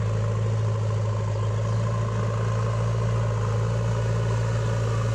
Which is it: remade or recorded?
recorded